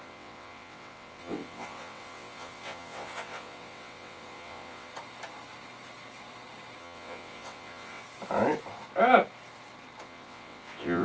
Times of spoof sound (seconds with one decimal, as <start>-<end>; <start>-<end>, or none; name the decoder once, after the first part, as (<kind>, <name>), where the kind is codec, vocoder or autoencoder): 0.0-4.9 (vocoder, WaveNeXt); 6.8-8.0; 10.0-11.0